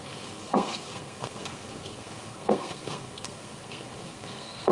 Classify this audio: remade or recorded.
remade